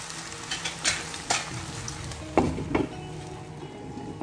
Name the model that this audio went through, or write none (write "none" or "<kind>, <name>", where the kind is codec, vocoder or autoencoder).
none